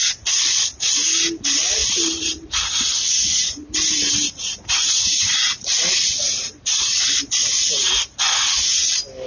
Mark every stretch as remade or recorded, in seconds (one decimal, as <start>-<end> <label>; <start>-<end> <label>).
0.0-1.8 recorded; 1.8-2.5 remade; 2.5-3.6 recorded; 3.6-7.2 remade; 7.2-9.3 recorded